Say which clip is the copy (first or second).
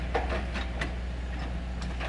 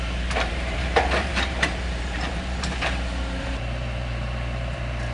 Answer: second